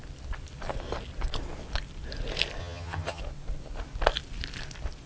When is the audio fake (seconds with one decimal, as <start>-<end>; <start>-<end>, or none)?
2.6-3.2